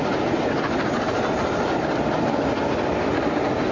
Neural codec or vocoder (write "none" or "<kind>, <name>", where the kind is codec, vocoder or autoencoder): none